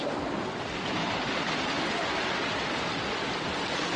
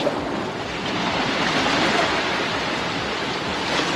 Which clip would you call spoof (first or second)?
second